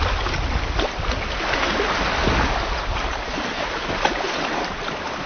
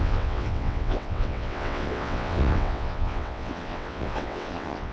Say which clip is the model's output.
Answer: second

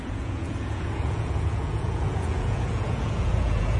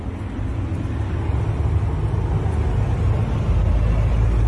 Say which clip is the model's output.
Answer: first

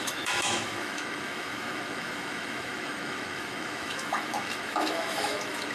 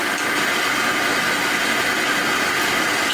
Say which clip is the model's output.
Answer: first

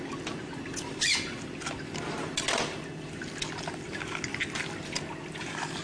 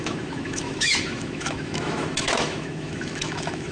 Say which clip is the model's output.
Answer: second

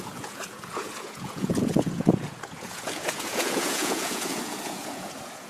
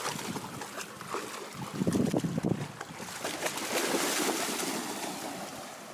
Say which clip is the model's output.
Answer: first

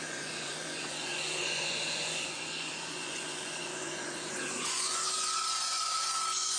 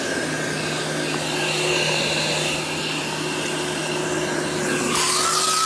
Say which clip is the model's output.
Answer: first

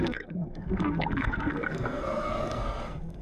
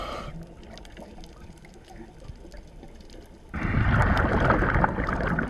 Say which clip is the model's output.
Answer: first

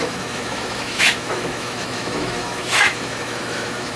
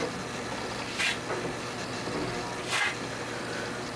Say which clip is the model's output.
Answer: first